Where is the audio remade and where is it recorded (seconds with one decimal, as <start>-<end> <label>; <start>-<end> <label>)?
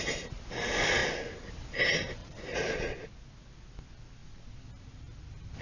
0.0-2.2 recorded; 2.2-2.9 remade; 2.9-5.6 recorded